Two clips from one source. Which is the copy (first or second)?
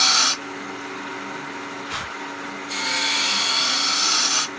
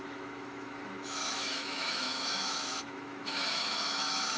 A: second